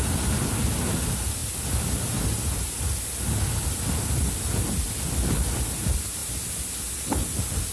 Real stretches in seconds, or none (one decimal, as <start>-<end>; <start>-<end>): 0.0-7.7